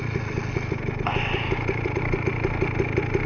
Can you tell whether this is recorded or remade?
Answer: recorded